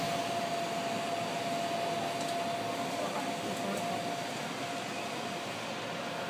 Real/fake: real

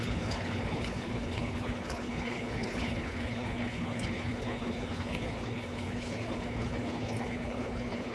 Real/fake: fake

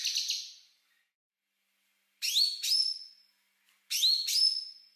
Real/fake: real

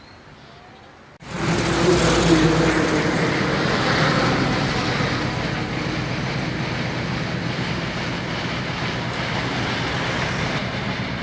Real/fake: real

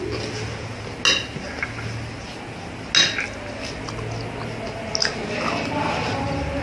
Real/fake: real